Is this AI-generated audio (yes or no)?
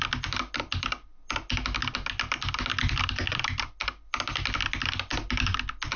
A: no